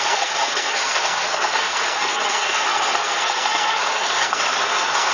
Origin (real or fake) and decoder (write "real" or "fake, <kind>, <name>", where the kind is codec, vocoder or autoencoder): fake, codec, SNAC